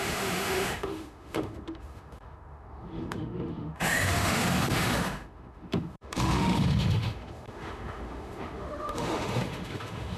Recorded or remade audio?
remade